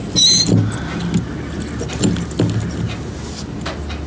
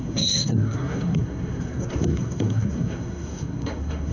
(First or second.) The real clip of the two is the first